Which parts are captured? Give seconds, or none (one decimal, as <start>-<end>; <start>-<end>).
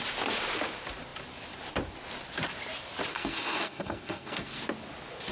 0.0-3.1; 4.6-5.3